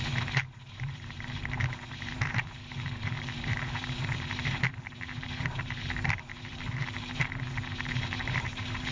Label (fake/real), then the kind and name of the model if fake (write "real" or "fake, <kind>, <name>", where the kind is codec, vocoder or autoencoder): fake, vocoder, BigVGAN v2